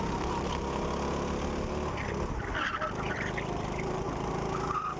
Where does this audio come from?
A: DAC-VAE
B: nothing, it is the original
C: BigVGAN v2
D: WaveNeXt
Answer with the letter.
B